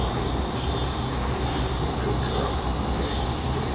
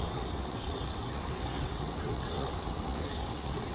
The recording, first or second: first